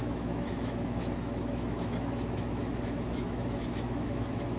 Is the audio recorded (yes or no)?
no